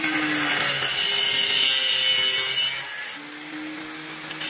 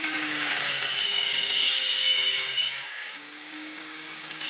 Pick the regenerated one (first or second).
second